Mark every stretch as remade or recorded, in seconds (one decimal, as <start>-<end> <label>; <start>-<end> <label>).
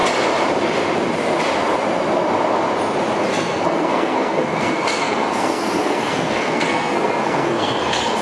0.0-3.3 recorded; 3.3-8.2 remade